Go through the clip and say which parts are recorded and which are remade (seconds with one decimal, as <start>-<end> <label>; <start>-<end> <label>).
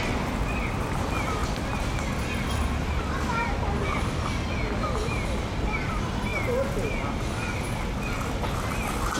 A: 0.0-9.2 recorded